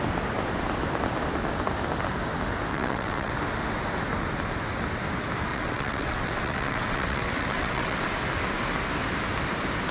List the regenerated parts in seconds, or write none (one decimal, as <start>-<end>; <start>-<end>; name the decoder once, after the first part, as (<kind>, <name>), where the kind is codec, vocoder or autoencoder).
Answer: 2.7-3.3 (vocoder, WaveNeXt); 5.5-8.1